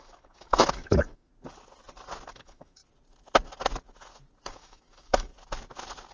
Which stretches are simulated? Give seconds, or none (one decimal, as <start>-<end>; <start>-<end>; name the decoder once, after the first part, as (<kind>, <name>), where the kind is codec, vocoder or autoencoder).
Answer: 0.0-1.3 (autoencoder, DAC-VAE); 2.3-2.8; 4.5-5.3